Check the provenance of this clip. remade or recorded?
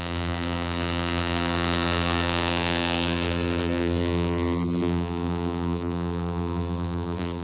remade